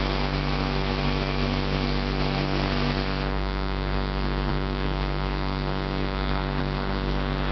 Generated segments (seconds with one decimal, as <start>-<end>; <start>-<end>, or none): 0.0-7.5

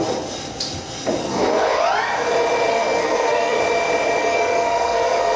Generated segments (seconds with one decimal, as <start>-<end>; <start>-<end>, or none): 1.2-1.8; 2.7-3.6; 4.2-5.4

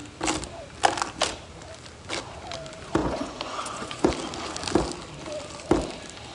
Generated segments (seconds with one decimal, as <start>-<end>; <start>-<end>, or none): 3.0-4.1

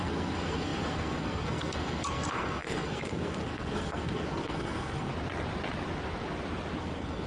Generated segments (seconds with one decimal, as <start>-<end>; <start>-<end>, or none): 0.0-5.1; 6.8-7.3

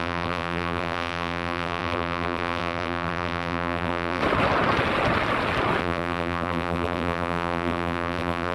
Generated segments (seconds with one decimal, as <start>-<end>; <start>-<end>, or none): 0.0-4.2; 5.8-8.5

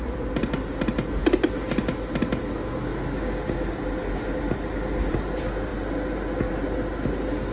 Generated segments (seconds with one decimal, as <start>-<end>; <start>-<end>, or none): none

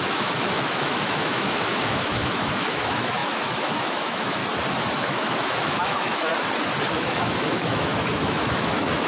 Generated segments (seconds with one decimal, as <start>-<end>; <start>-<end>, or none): 0.0-4.4; 5.0-6.3; 6.9-9.1